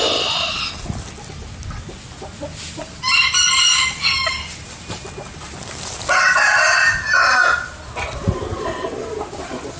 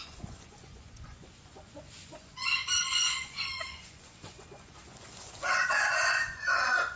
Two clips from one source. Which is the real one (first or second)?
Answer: first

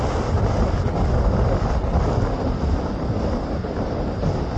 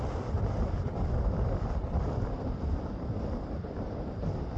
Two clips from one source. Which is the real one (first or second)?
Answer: first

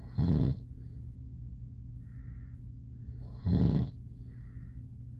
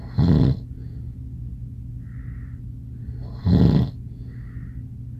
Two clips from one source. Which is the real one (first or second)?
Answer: second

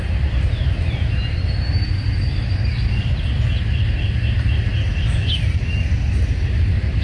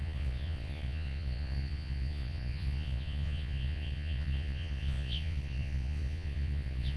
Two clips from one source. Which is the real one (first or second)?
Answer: first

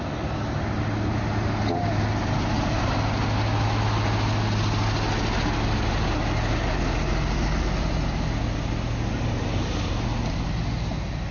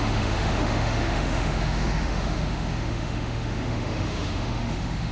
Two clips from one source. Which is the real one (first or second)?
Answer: first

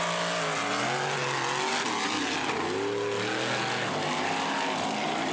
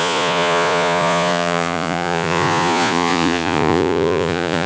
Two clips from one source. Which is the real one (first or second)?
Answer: first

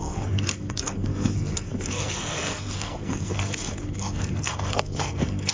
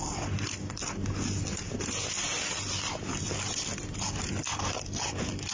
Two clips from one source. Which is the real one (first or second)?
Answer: second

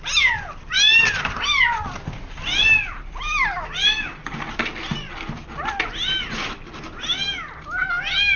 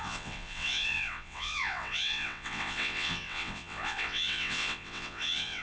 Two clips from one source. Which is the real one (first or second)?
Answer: first